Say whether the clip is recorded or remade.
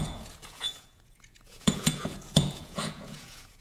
remade